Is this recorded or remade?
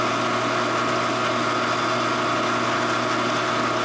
recorded